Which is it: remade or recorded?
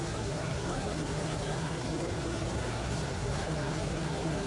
remade